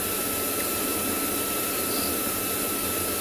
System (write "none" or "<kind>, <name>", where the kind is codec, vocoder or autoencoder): none